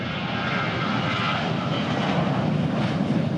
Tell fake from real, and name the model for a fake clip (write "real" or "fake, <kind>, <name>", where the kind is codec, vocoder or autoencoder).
real